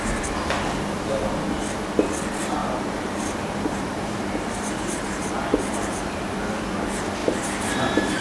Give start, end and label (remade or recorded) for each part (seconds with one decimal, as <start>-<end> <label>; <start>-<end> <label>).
0.0-2.6 recorded; 2.6-6.6 remade; 6.6-7.2 recorded; 7.2-8.2 remade